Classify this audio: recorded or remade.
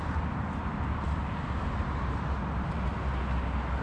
recorded